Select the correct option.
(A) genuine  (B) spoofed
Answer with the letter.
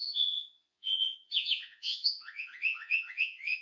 B